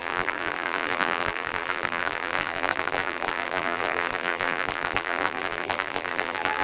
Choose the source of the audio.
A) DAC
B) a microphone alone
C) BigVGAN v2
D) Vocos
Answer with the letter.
C